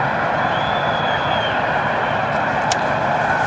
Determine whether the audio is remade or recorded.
recorded